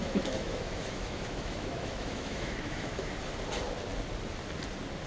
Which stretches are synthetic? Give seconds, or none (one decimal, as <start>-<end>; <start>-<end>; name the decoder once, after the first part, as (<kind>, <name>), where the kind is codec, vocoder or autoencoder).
0.0-3.1 (autoencoder, DAC-VAE)